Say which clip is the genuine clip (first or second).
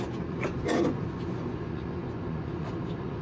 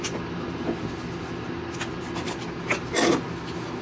second